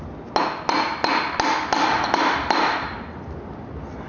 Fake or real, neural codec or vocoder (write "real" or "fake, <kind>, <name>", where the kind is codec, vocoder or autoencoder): real